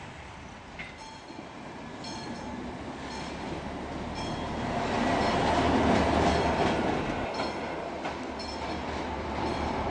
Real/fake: real